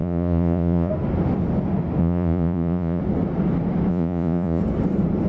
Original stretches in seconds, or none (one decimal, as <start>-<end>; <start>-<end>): 0.9-2.0; 3.0-3.9; 4.6-5.3